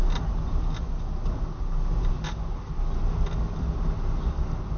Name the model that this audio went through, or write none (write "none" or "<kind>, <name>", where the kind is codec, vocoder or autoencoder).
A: none